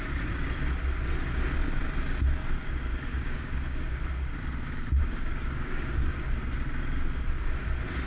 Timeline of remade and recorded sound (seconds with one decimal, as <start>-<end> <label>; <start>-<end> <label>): 0.0-2.9 recorded; 2.9-4.0 remade; 4.0-5.0 recorded; 5.0-6.3 remade; 6.3-8.1 recorded